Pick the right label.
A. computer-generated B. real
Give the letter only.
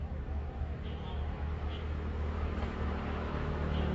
A